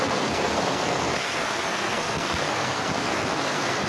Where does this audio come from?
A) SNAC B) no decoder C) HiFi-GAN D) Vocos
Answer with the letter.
A